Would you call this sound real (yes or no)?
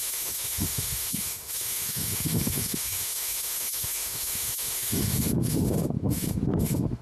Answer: no